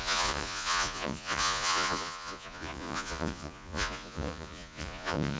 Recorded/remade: remade